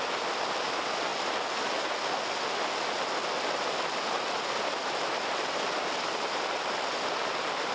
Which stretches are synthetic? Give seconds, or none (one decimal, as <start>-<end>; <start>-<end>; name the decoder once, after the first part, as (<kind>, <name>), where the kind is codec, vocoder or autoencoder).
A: 0.0-1.1 (vocoder, BigVGAN v2); 3.6-7.7